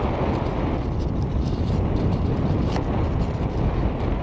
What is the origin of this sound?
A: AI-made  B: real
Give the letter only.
B